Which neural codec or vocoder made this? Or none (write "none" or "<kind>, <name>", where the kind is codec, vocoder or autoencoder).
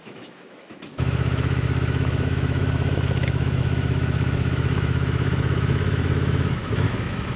autoencoder, DAC-VAE